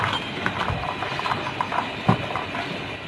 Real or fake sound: real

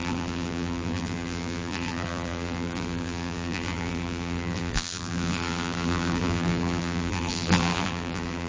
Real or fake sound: fake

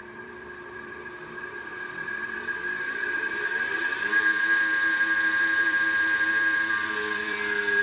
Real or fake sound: fake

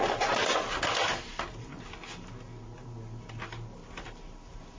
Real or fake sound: real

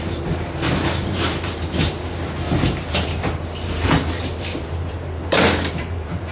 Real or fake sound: fake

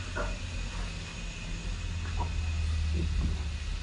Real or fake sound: real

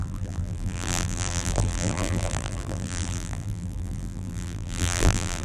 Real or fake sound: fake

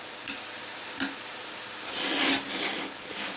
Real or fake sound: fake